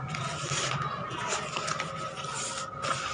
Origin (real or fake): real